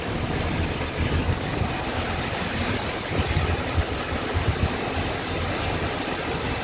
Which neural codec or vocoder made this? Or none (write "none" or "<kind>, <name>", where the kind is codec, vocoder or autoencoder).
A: vocoder, BigVGAN v2